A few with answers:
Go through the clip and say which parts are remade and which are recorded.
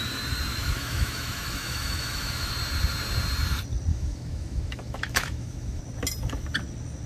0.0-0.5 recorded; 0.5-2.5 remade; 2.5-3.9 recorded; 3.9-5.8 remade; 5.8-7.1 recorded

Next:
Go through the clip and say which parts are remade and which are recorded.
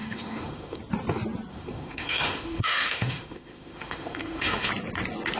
0.0-0.8 remade; 0.8-1.5 recorded; 1.5-4.7 remade; 4.7-5.4 recorded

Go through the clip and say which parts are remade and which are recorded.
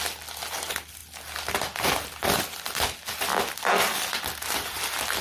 0.0-5.2 recorded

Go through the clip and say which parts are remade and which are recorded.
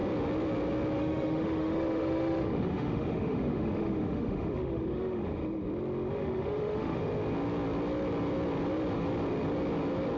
0.0-1.0 recorded; 1.0-5.4 remade; 5.4-6.1 recorded; 6.1-7.0 remade; 7.0-10.2 recorded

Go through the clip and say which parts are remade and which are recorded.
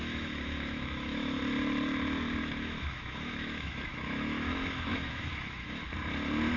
0.0-1.4 remade; 1.4-2.4 recorded; 2.4-5.8 remade; 5.8-6.6 recorded